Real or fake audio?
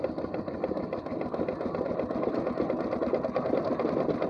real